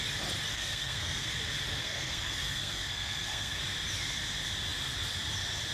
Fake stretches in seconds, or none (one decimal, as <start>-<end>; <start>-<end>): 0.5-1.3; 1.8-3.6